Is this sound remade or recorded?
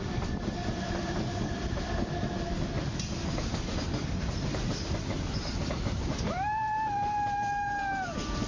remade